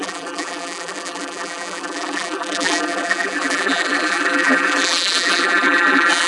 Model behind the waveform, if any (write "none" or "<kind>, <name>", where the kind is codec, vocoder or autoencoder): vocoder, BigVGAN v2